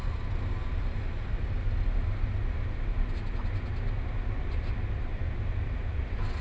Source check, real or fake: real